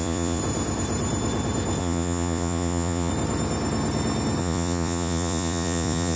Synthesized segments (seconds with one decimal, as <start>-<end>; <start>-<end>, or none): 0.0-0.4; 1.8-3.1; 4.4-6.2